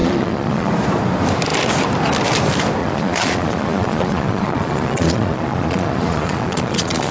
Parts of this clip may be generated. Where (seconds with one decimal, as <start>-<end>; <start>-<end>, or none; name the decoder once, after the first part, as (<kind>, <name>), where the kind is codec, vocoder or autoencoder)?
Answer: 0.0-0.7 (vocoder, Vocos); 2.8-7.1